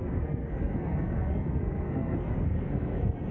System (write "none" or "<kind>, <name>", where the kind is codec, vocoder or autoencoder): codec, SNAC